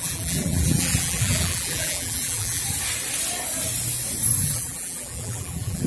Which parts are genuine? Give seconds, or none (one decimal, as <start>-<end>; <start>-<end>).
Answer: 2.6-4.4